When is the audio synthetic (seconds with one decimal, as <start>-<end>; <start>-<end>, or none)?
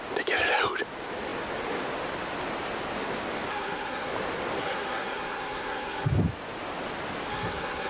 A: 3.5-4.1; 4.6-6.1; 7.3-7.9